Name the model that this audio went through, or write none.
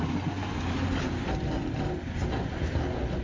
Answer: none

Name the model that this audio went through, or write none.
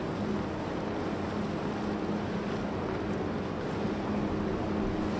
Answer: none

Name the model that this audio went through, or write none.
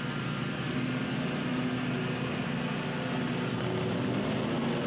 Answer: none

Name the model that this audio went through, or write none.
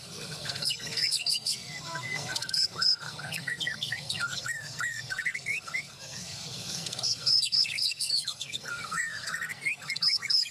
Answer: codec, SNAC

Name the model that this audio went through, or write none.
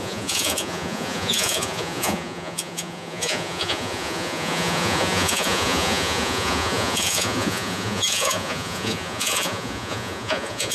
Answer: vocoder, Vocos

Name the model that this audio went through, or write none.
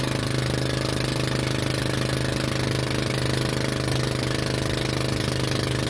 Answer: none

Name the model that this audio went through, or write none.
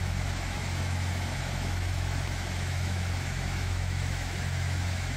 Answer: autoencoder, DAC-VAE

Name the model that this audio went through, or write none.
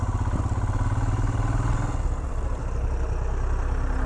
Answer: none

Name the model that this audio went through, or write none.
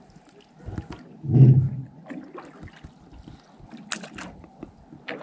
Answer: none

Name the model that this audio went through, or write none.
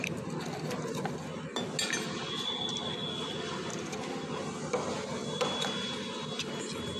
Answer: none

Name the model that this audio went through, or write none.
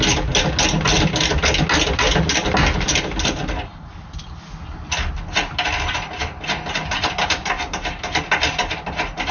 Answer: none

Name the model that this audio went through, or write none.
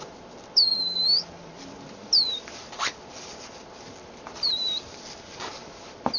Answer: none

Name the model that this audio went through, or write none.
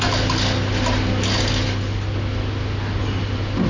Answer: none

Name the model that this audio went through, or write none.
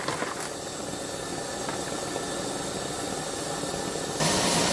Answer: none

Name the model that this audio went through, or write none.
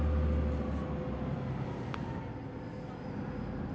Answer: none